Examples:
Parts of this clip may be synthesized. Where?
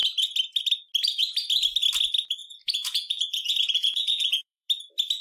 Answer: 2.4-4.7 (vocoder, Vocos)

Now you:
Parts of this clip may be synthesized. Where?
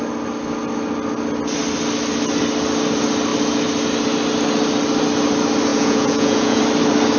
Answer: 5.7-6.6 (vocoder, Vocos)